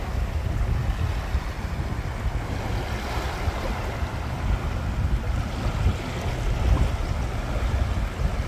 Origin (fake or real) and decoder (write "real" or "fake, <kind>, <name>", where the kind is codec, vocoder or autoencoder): real